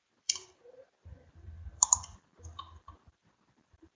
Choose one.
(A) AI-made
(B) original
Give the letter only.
A